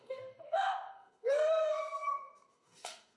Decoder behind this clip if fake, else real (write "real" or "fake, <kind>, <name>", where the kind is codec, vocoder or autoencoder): fake, codec, SNAC